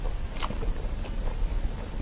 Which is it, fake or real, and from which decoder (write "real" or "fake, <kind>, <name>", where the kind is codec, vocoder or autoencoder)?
real